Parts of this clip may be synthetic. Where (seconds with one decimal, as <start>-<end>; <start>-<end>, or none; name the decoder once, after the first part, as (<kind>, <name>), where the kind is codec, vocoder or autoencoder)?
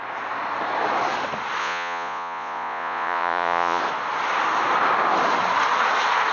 1.6-3.8 (vocoder, Vocos)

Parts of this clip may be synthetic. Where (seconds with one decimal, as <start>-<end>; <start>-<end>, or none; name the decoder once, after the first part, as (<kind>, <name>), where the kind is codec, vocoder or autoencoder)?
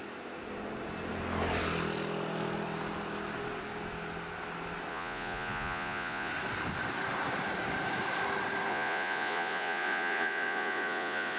4.9-6.3 (vocoder, Vocos); 8.7-11.4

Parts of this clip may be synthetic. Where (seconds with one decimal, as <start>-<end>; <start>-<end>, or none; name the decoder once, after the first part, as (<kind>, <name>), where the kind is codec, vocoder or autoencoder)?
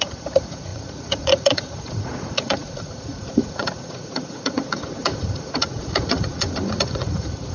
0.0-7.5 (vocoder, Vocos)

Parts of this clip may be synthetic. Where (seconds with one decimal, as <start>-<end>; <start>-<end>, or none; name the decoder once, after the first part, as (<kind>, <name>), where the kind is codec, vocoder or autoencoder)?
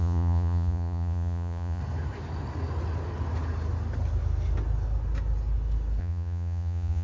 0.0-1.8 (vocoder, Vocos); 6.0-7.0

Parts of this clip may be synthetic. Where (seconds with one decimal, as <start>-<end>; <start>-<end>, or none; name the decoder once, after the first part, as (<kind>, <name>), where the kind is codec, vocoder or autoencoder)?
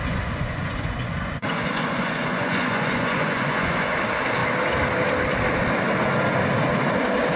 0.0-4.0 (vocoder, Vocos)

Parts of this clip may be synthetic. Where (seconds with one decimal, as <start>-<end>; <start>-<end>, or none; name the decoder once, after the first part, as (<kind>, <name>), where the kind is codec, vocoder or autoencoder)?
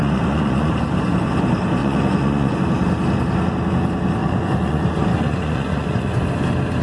0.0-0.7 (vocoder, Vocos); 1.8-2.6; 4.2-6.2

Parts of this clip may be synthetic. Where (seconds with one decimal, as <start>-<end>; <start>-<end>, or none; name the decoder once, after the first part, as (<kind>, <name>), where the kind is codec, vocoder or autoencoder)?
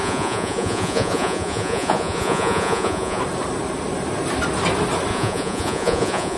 0.0-3.2 (vocoder, Vocos); 5.1-6.4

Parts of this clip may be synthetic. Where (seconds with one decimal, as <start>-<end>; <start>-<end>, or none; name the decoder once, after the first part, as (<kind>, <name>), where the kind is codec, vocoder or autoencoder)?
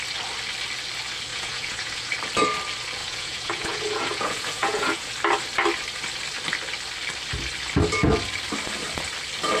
1.3-2.1 (vocoder, Vocos); 3.0-5.1